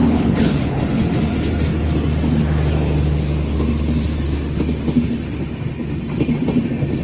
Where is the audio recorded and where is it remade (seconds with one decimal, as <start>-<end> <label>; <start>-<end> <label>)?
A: 0.0-0.8 remade; 0.8-7.0 recorded

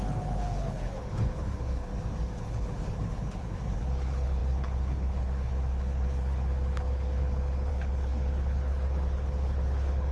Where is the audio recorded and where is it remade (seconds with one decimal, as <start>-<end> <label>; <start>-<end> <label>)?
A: 0.0-1.9 remade; 1.9-2.4 recorded; 2.4-10.1 remade

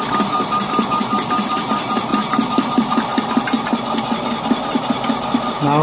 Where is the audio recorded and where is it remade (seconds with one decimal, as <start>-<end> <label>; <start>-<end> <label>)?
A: 0.0-5.8 recorded